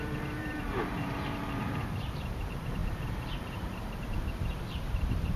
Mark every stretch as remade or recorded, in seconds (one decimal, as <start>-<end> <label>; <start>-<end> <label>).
0.0-5.4 remade